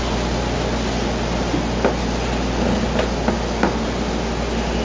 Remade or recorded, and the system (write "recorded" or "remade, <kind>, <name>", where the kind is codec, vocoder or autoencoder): recorded